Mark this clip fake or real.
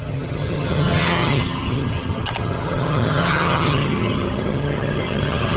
fake